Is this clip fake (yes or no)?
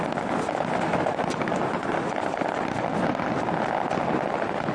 no